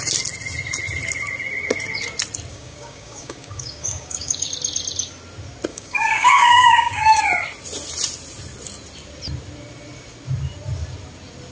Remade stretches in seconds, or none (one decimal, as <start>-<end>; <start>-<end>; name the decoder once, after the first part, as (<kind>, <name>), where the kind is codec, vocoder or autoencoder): 2.5-4.5 (codec, DAC); 5.7-7.2